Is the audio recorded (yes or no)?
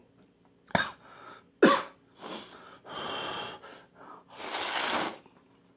yes